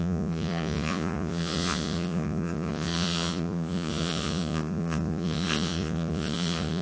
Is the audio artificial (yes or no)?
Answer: yes